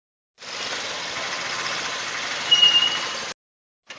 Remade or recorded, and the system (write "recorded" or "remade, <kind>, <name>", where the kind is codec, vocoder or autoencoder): recorded